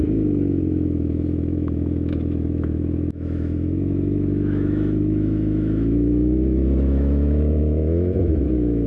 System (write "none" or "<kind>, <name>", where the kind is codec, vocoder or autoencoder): autoencoder, DAC-VAE